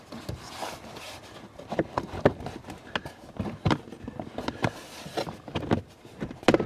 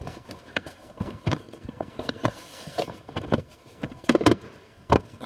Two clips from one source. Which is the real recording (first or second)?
first